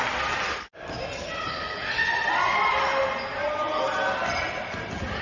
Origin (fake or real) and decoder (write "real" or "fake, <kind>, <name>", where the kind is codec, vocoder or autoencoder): real